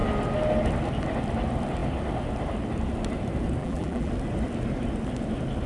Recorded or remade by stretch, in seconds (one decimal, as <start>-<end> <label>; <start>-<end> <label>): 0.0-3.6 recorded; 3.6-4.1 remade; 4.1-5.7 recorded

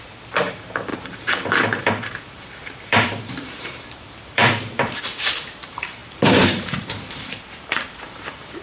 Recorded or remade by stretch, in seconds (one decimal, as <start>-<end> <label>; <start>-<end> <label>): 0.0-8.6 remade

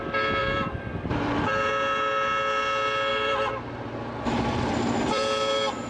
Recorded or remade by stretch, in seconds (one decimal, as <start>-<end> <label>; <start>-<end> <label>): 0.0-0.4 recorded; 0.4-1.7 remade; 1.7-3.1 recorded; 3.1-5.9 remade